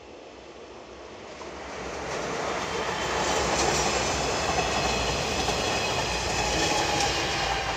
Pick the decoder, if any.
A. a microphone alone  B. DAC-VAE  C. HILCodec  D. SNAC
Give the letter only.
A